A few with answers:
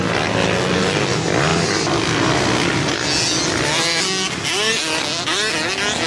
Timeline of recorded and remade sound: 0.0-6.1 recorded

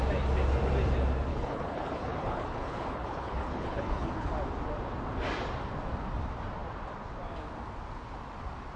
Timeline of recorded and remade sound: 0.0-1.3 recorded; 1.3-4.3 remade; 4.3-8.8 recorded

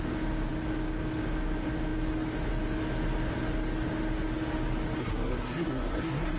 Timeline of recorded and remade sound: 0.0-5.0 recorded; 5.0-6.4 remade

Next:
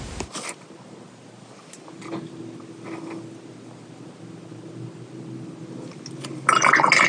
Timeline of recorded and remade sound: 0.0-7.1 recorded